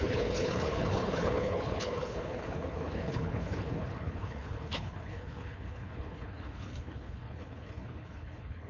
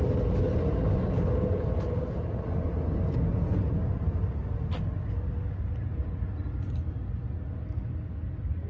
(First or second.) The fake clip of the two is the first